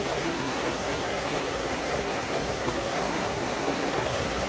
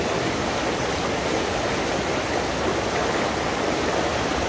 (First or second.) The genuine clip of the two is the second